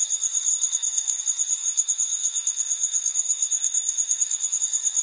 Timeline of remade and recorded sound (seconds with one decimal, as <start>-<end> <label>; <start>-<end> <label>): 0.0-0.5 recorded; 0.5-1.2 remade; 1.2-1.6 recorded; 1.6-4.6 remade; 4.6-5.0 recorded